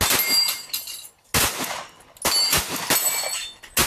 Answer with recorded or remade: recorded